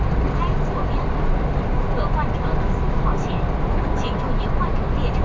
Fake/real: real